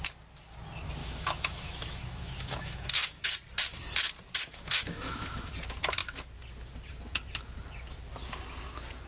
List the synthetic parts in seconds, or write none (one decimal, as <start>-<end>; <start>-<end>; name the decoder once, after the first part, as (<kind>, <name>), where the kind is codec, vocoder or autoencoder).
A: 1.0-3.2 (autoencoder, DAC-VAE); 4.4-5.5